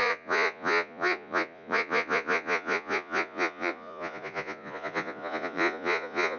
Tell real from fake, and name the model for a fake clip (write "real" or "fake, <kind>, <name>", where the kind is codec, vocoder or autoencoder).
fake, vocoder, Vocos